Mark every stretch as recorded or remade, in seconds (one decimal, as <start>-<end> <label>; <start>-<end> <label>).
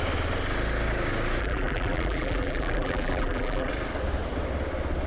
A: 0.0-1.4 recorded; 1.4-3.7 remade; 3.7-5.1 recorded